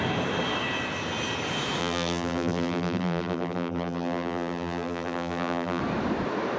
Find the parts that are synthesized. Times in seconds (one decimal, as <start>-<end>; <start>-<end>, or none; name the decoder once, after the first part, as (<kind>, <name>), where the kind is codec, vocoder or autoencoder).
1.8-5.8 (vocoder, BigVGAN v2)